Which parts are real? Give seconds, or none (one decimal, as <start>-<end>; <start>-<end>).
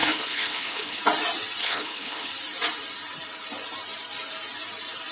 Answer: 1.0-1.6; 2.3-5.1